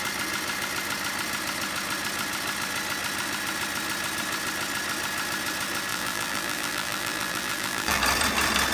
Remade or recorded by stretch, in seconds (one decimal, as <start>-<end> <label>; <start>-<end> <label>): 0.0-5.9 recorded; 5.9-8.0 remade; 8.0-8.7 recorded